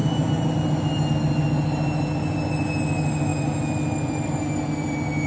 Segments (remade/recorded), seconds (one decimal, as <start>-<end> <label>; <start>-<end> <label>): 0.0-5.3 recorded